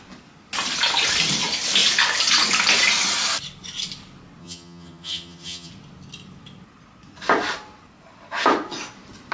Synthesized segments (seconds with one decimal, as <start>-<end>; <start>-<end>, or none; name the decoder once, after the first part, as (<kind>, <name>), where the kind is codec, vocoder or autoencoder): 4.4-5.7 (vocoder, HiFi-GAN)